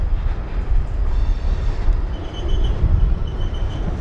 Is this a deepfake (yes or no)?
yes